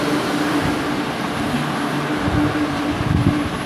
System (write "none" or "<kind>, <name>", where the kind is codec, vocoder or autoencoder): none